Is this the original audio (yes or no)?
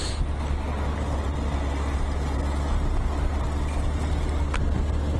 yes